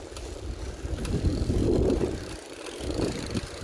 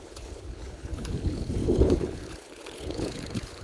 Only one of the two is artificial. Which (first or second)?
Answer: second